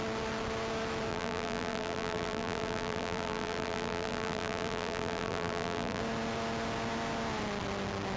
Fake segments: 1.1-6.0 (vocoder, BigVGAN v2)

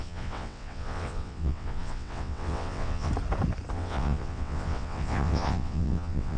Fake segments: 0.0-3.1 (vocoder, WaveNeXt); 3.7-6.4

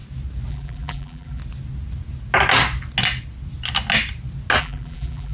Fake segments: 0.5-1.4 (vocoder, BigVGAN v2); 4.6-5.3